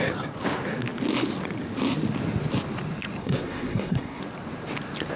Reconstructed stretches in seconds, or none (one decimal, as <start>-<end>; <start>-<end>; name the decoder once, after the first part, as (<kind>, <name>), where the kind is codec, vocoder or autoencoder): 3.2-4.2 (codec, SNAC)